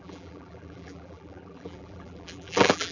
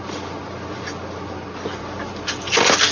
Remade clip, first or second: first